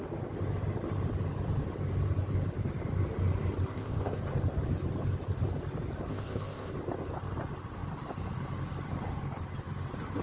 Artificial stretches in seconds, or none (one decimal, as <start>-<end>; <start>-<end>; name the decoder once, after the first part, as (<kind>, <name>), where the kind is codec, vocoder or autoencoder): 3.7-4.2 (codec, ZipCodec); 6.1-6.7